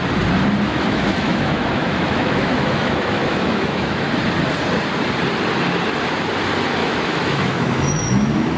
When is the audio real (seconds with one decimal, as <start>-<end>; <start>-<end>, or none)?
0.0-0.7; 4.1-6.8